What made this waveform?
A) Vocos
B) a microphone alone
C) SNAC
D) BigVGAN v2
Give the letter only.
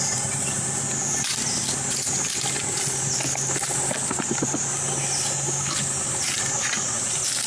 B